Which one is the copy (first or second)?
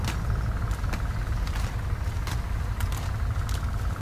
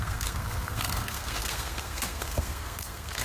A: second